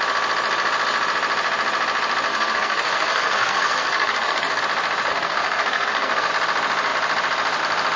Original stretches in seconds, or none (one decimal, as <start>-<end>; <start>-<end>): 0.0-2.3; 4.6-5.1; 6.3-8.0